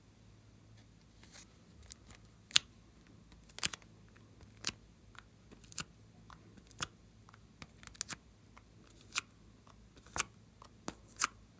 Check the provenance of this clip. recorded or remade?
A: recorded